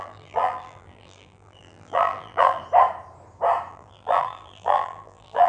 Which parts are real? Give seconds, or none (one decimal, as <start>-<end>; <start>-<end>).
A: 2.6-3.7